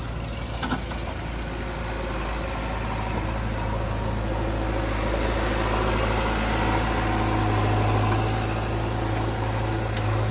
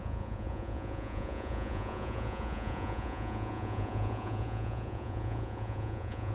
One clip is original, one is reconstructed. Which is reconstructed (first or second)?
second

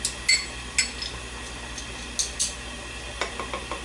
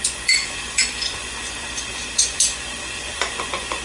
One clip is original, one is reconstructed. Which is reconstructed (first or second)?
second